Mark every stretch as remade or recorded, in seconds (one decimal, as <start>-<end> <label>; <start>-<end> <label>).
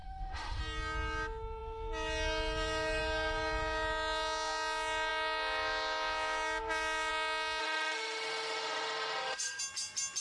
0.0-0.6 remade; 0.6-7.6 recorded; 7.6-9.6 remade; 9.6-10.2 recorded